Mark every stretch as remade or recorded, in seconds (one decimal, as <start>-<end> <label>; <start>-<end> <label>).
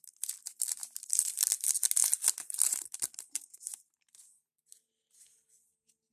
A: 0.0-0.8 recorded; 0.8-1.5 remade; 1.5-6.1 recorded